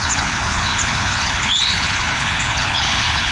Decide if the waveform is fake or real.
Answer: fake